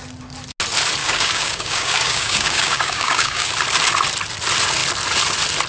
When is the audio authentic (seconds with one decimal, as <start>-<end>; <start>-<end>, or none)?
0.0-1.0; 3.5-5.7

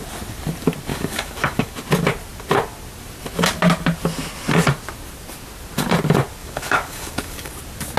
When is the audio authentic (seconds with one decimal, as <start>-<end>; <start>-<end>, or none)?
0.0-0.9; 1.7-6.4; 7.5-8.0

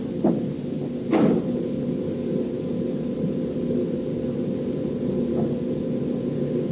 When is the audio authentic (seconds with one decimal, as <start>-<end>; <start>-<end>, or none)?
0.0-6.7

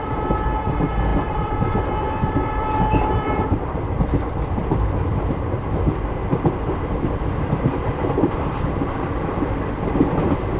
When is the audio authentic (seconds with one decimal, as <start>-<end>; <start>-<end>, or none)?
none

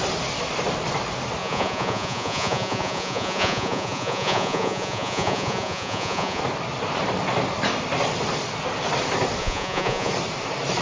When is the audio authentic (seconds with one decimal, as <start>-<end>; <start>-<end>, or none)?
0.0-1.4; 6.4-9.4; 10.1-10.8

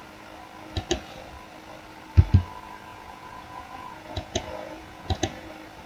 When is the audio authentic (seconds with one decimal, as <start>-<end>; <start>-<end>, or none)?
0.0-2.9; 5.5-5.9

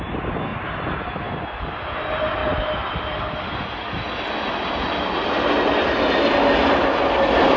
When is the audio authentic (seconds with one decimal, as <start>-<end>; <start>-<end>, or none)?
0.0-7.6